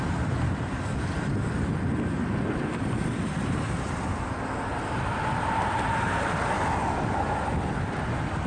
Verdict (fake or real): real